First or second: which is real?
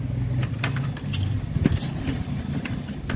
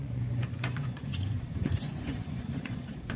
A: first